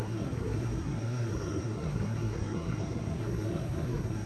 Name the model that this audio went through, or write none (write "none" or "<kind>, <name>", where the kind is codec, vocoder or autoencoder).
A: codec, SNAC